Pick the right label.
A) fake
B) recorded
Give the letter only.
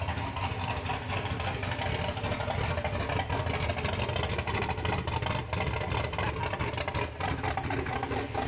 B